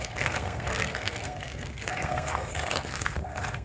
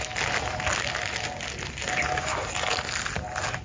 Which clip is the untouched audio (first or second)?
second